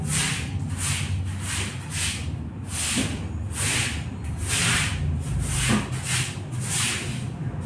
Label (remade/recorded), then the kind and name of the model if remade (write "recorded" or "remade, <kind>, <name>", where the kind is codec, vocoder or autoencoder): recorded